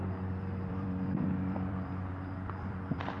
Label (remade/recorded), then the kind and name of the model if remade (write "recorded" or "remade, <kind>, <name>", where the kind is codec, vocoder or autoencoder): remade, vocoder, BigVGAN v2